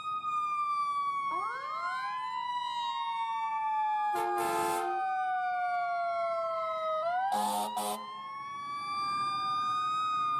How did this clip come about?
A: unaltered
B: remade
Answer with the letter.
A